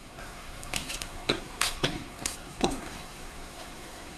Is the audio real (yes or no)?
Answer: no